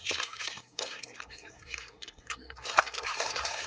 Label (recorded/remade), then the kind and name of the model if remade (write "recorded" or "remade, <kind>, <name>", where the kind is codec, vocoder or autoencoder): remade, codec, SNAC